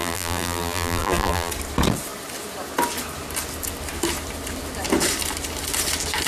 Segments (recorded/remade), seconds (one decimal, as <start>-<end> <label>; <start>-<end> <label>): 0.0-1.5 remade; 1.5-6.3 recorded